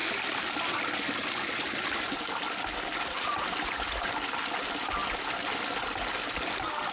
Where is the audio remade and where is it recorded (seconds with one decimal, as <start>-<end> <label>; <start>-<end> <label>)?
0.0-4.1 remade; 4.1-6.9 recorded